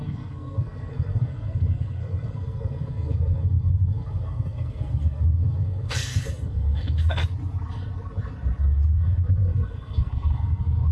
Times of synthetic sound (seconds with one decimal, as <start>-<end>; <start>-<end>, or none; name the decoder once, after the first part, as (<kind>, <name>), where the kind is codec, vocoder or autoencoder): 0.0-7.2 (codec, SNAC); 8.6-10.9